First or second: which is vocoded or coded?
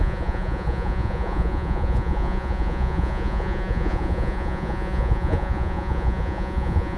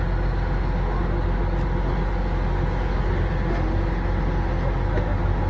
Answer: first